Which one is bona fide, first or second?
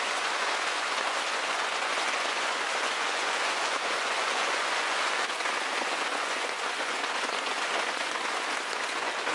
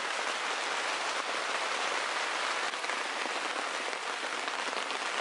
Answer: second